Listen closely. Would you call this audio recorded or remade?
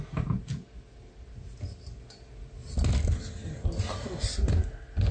recorded